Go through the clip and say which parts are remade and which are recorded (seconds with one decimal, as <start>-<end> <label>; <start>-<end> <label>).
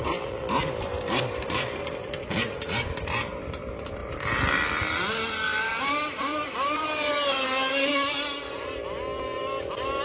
0.0-0.9 recorded; 0.9-1.8 remade; 1.8-10.0 recorded